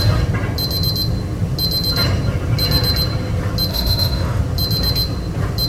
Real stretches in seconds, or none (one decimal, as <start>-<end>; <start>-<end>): 0.0-3.7; 4.4-5.7